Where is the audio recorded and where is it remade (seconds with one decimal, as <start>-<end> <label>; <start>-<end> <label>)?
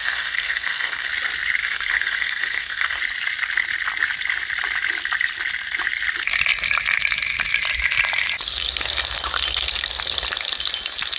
0.0-1.1 remade; 1.1-1.6 recorded; 1.6-3.0 remade; 3.0-11.2 recorded